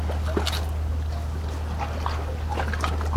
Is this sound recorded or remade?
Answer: recorded